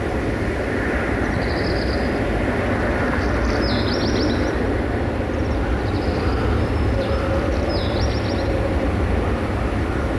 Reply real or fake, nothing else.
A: real